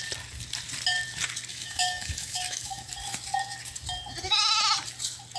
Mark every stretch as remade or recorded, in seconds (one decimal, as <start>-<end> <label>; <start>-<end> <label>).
0.0-1.5 recorded; 1.5-2.9 remade; 2.9-5.4 recorded

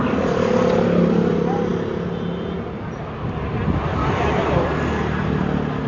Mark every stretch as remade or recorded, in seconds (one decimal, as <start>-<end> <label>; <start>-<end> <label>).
0.0-5.9 recorded